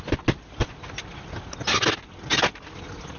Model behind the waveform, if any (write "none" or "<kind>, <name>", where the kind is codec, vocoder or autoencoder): none